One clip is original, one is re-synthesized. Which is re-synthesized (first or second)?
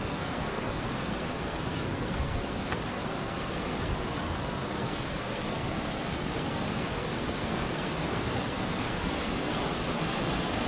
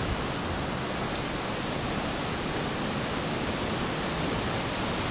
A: first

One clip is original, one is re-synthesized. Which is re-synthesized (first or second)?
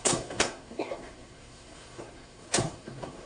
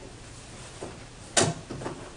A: first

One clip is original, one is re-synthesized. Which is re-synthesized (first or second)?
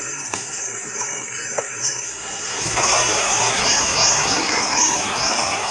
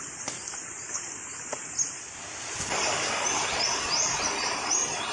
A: first